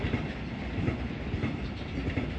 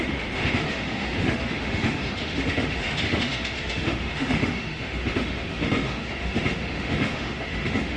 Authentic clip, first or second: first